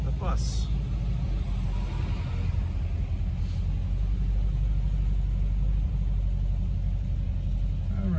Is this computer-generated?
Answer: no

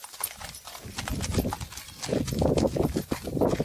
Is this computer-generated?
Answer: no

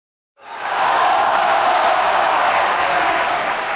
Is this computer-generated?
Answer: yes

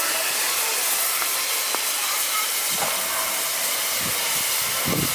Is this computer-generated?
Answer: no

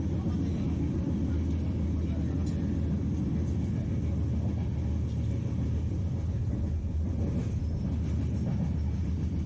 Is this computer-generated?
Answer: no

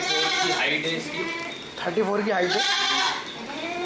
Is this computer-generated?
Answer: no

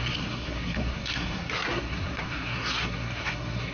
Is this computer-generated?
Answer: yes